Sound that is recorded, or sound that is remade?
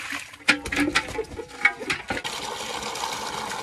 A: recorded